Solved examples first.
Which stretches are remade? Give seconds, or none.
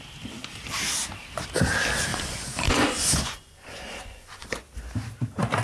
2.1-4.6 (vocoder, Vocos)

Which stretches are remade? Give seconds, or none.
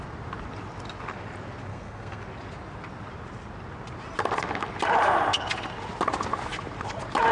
1.7-2.2 (codec, SNAC)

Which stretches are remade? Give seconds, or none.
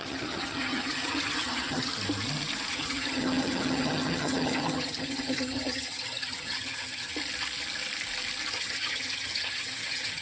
0.0-1.9 (vocoder, HiFi-GAN); 2.7-7.1; 8.5-10.2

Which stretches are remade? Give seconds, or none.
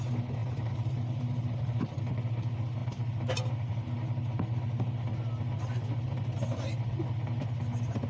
0.4-2.0 (vocoder, BigVGAN v2)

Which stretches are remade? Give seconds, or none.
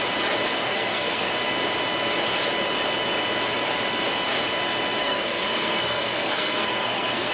0.6-1.3 (codec, SNAC); 5.0-7.3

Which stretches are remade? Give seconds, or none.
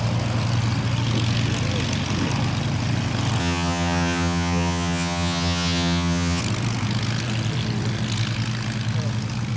3.4-6.4 (vocoder, HiFi-GAN)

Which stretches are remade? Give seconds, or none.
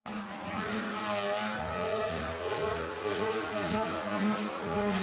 0.0-1.0 (vocoder, Vocos); 1.6-5.0